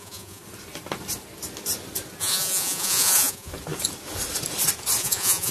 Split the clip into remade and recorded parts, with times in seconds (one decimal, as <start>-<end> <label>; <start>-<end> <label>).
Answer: 0.0-0.4 remade; 0.4-2.2 recorded; 2.2-3.5 remade; 3.5-5.0 recorded; 5.0-5.5 remade